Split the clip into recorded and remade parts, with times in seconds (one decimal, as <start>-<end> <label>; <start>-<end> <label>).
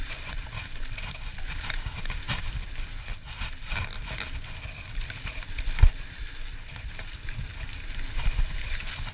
0.0-0.7 remade; 0.7-1.3 recorded; 1.3-2.0 remade; 2.0-6.5 recorded; 6.5-7.5 remade; 7.5-9.1 recorded